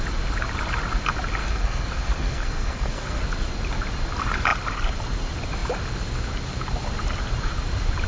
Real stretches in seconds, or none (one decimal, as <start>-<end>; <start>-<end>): 0.0-1.4; 3.2-8.1